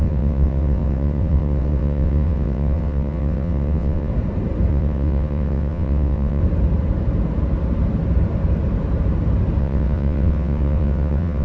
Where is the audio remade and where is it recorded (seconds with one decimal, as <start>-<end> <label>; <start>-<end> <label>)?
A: 0.0-4.1 remade; 4.1-4.7 recorded; 4.7-6.4 remade; 6.4-9.6 recorded; 9.6-11.4 remade